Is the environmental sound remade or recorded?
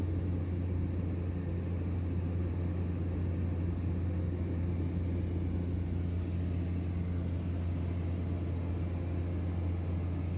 recorded